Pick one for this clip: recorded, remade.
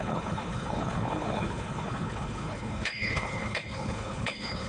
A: remade